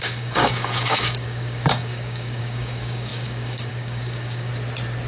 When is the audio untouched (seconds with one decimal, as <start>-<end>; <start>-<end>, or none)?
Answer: 4.5-5.1